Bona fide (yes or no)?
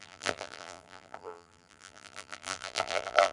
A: no